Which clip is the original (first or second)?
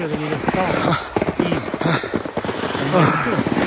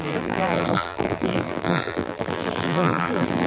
first